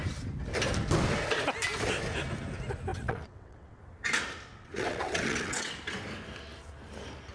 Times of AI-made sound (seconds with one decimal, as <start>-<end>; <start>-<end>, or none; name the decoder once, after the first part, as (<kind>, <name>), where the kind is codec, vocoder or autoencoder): 2.9-3.8 (vocoder, WaveNeXt); 4.5-5.7